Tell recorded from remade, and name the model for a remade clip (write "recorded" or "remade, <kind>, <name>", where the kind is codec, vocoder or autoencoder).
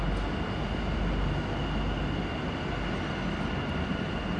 recorded